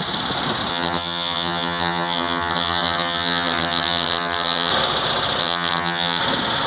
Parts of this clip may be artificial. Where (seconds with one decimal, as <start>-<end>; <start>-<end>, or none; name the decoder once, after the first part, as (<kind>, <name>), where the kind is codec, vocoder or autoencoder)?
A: 0.7-4.7 (vocoder, HiFi-GAN); 5.4-6.2